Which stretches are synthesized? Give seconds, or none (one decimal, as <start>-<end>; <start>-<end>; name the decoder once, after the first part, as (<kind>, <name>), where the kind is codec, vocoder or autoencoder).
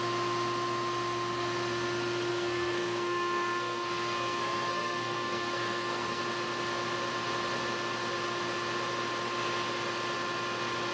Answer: 2.3-6.2 (codec, SNAC)